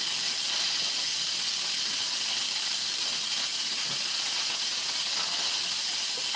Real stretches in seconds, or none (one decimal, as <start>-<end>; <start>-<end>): 0.0-3.5; 5.1-6.4

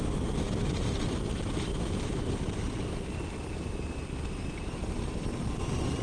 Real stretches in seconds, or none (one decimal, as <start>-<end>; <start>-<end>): 0.0-1.7; 2.6-6.0

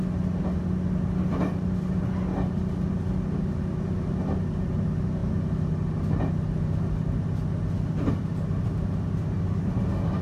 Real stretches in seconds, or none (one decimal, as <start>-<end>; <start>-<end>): 0.0-10.2

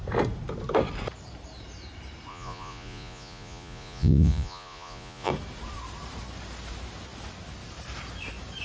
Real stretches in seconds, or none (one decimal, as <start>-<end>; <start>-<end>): 0.0-2.3; 5.3-8.6

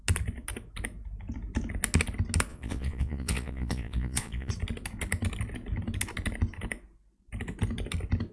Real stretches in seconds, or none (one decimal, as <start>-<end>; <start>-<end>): 0.0-2.5; 4.5-8.3

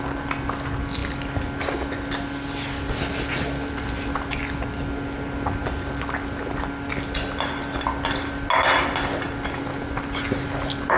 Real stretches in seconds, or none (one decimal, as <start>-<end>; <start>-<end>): 0.0-11.0